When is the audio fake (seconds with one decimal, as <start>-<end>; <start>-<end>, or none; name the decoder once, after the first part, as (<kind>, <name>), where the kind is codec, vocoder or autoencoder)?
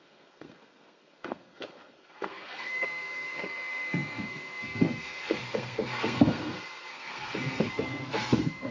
0.0-8.7 (codec, SNAC)